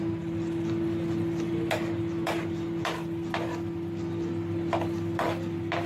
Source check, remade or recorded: recorded